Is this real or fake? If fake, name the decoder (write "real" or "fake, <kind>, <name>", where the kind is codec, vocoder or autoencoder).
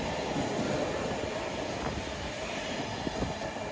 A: real